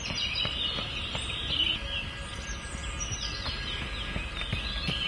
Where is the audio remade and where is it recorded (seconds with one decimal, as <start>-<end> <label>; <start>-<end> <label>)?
0.0-5.1 recorded